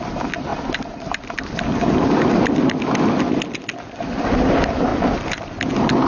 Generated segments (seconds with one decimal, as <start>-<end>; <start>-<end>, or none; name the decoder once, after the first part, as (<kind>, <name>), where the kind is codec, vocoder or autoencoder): none